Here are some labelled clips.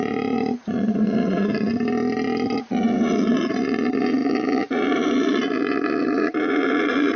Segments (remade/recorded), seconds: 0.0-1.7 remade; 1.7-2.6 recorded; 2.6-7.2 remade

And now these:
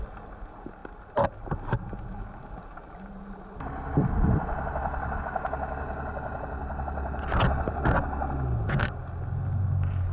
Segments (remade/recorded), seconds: 0.0-10.1 recorded

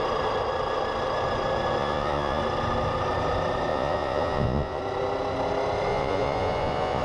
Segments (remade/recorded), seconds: 0.0-1.8 recorded; 1.8-2.4 remade; 2.4-3.7 recorded; 3.7-4.8 remade; 4.8-5.9 recorded; 5.9-7.0 remade

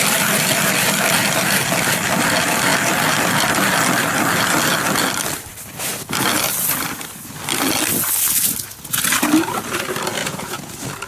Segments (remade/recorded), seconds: 0.0-10.2 recorded; 10.2-10.7 remade; 10.7-11.1 recorded

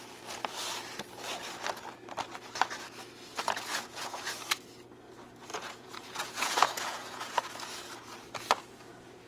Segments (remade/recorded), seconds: 0.0-3.7 recorded; 3.7-4.3 remade; 4.3-5.5 recorded; 5.5-7.4 remade; 7.4-9.3 recorded

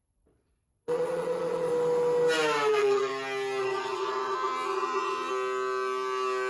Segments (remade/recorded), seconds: 0.0-1.7 remade; 1.7-2.7 recorded; 2.7-3.1 remade; 3.1-3.6 recorded; 3.6-5.3 remade; 5.3-6.5 recorded

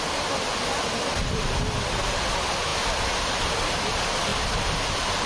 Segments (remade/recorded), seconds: 0.0-5.3 recorded